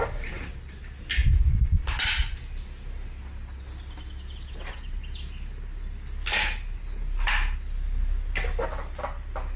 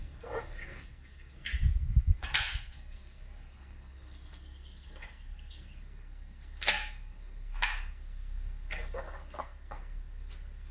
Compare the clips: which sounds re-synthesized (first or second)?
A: second